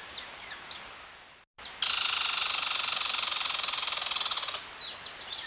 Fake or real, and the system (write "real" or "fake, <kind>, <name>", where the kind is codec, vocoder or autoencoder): real